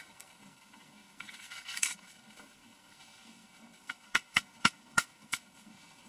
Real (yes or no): no